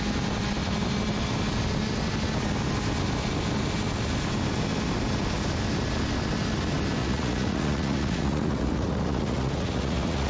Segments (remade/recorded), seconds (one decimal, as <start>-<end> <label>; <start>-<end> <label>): 0.0-7.0 recorded; 7.0-10.3 remade